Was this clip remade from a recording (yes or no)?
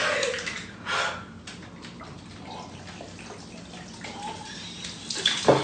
no